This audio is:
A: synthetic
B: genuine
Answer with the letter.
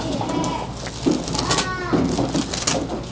B